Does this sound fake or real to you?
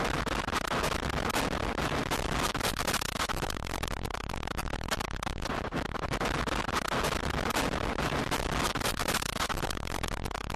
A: real